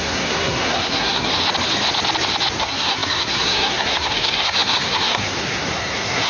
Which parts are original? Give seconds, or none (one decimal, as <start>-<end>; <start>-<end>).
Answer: 1.3-2.6